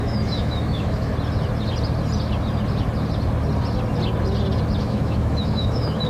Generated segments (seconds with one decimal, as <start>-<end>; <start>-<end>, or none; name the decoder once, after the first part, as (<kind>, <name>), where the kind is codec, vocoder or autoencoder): 0.0-1.1 (autoencoder, DAC-VAE); 4.8-6.1